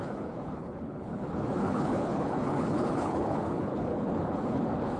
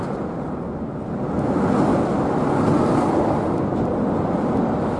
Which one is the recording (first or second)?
second